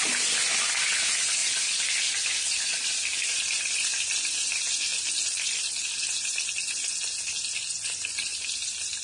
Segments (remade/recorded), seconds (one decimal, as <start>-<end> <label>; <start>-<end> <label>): 0.0-1.4 recorded; 1.4-2.9 remade; 2.9-9.0 recorded